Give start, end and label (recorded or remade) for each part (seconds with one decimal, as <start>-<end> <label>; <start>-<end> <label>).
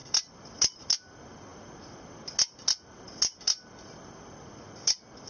0.0-5.3 recorded